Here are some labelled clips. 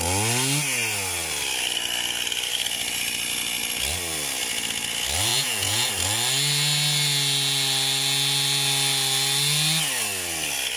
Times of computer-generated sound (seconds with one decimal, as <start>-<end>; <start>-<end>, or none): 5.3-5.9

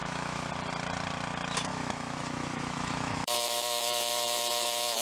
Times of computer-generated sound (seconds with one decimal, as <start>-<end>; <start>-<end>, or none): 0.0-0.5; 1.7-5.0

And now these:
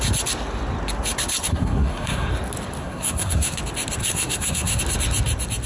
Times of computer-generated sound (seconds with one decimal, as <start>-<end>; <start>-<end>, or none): 1.4-2.3; 2.8-3.6; 4.0-4.8